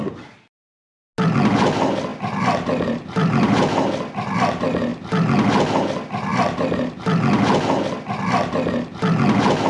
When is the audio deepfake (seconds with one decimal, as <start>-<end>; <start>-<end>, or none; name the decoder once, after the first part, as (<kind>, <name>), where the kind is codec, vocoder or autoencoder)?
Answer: 2.1-3.6 (vocoder, BigVGAN v2); 6.3-7.0